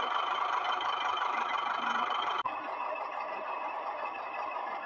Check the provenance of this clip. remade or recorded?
remade